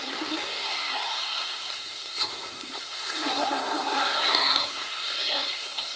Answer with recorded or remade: remade